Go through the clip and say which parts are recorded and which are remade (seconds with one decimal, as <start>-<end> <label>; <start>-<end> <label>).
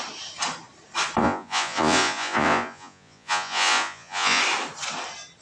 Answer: 0.0-1.2 recorded; 1.2-4.4 remade; 4.4-5.4 recorded